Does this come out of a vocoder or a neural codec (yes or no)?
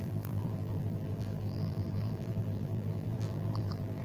yes